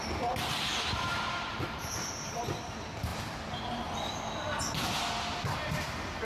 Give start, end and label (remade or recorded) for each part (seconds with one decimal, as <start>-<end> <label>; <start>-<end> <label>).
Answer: 0.0-0.7 recorded; 0.7-2.5 remade; 2.5-6.2 recorded